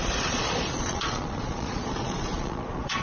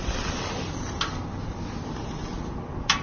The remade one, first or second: first